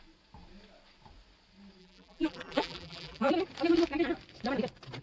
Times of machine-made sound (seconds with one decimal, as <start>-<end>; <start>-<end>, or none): 1.8-3.3